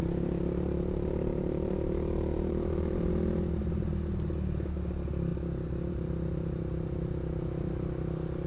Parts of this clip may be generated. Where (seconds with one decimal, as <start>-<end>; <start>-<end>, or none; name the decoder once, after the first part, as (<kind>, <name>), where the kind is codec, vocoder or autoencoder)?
0.0-3.1 (vocoder, BigVGAN v2)